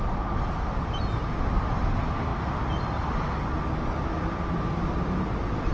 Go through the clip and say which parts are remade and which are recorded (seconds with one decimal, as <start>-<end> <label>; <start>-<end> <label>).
0.0-5.7 recorded